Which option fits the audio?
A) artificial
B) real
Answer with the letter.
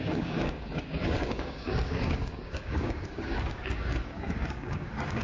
A